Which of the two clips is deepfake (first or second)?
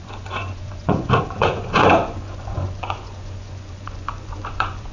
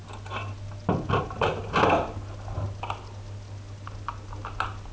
first